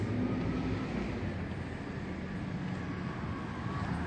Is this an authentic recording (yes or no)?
yes